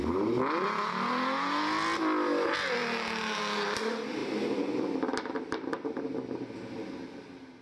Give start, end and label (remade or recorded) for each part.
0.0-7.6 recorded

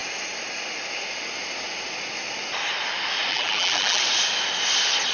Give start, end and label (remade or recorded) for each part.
0.0-3.3 recorded; 3.3-4.0 remade; 4.0-5.1 recorded

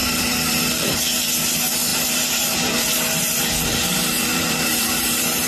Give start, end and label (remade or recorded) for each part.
0.0-0.5 remade; 0.5-1.9 recorded; 1.9-5.5 remade

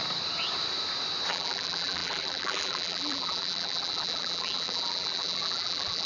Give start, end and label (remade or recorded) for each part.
0.0-1.3 recorded; 1.3-6.1 remade

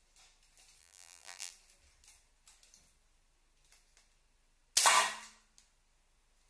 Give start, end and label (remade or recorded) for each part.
0.0-0.8 recorded; 0.8-1.5 remade; 1.5-6.5 recorded

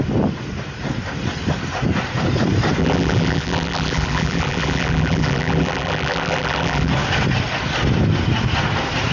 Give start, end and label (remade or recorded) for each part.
0.0-2.8 recorded; 2.8-6.9 remade; 6.9-9.1 recorded

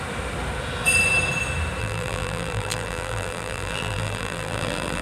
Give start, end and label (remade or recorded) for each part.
0.0-1.8 recorded; 1.8-5.0 remade

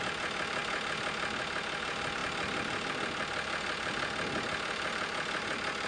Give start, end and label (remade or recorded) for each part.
0.0-0.6 remade; 0.6-1.8 recorded; 1.8-5.9 remade